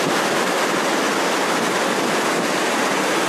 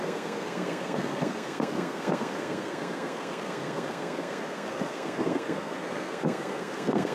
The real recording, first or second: first